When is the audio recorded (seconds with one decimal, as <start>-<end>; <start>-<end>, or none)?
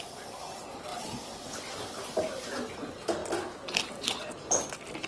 0.0-5.1